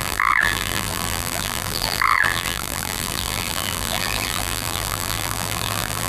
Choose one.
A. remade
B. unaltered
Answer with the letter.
A